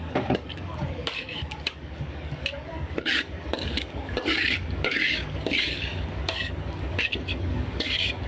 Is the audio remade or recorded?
remade